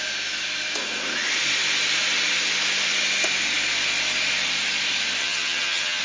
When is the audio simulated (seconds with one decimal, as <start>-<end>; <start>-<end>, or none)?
5.2-6.0